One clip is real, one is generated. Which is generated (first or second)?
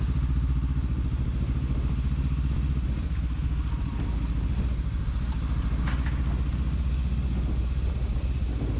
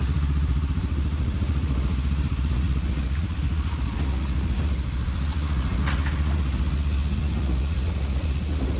second